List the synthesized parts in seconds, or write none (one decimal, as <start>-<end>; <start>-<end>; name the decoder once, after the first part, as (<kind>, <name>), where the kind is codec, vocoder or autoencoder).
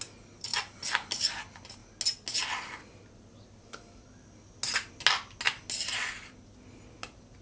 none